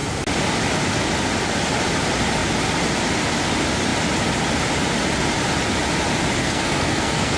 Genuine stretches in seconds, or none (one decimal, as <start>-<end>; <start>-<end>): 0.0-6.4